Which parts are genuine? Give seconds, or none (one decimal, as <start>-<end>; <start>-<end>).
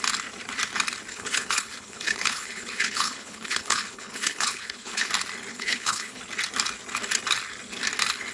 0.0-1.1; 5.1-5.5; 6.2-8.3